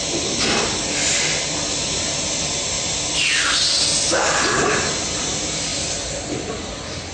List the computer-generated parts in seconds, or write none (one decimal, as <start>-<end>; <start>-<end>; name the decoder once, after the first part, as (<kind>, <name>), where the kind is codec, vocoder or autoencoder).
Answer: none